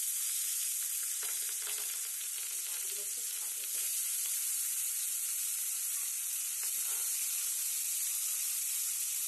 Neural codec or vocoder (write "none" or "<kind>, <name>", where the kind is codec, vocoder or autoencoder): none